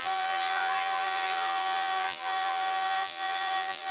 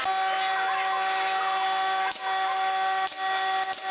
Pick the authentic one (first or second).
second